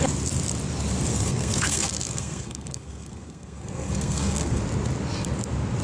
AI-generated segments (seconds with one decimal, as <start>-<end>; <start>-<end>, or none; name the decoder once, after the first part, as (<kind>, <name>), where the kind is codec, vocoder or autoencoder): 1.1-4.6 (codec, SNAC)